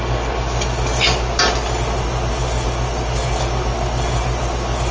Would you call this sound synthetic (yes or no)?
no